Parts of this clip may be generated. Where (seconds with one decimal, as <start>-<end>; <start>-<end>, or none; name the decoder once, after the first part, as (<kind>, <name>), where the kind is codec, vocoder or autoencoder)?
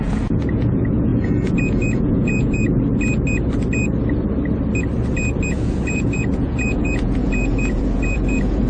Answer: 0.0-2.6 (vocoder, Vocos); 5.5-8.7